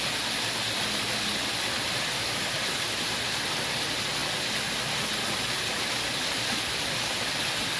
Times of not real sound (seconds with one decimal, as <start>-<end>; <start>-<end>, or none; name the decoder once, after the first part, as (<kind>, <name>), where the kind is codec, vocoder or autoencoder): none